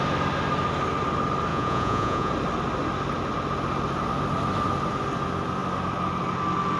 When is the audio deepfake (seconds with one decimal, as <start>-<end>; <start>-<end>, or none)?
1.5-2.3